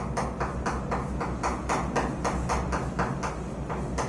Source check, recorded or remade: recorded